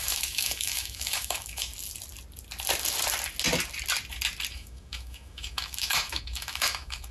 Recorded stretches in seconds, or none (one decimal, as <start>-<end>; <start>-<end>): 1.7-4.5